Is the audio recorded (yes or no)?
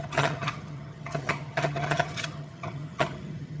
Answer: no